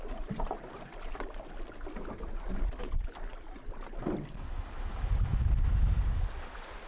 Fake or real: real